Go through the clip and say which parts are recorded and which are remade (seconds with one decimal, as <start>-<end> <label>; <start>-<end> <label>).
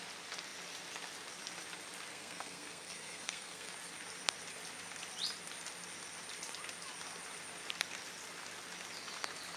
0.0-2.1 recorded; 2.1-3.7 remade; 3.7-9.6 recorded